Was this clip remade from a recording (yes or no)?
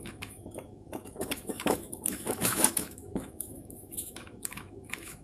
yes